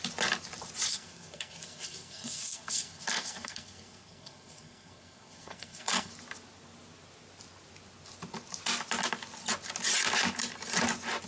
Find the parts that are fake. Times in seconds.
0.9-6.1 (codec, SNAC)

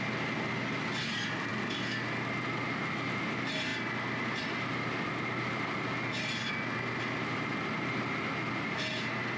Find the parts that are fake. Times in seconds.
none

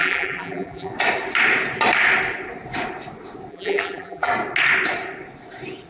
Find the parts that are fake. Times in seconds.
0.0-0.9 (vocoder, BigVGAN v2); 3.5-4.3

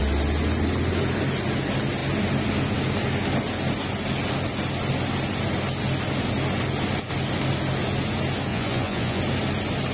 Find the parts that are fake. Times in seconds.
8.5-9.2 (vocoder, Vocos)

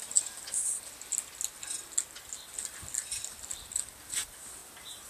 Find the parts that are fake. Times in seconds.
none

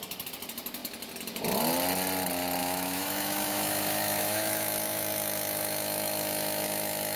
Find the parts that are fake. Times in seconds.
2.6-7.2 (autoencoder, DAC-VAE)

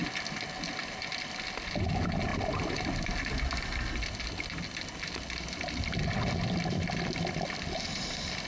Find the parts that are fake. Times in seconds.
none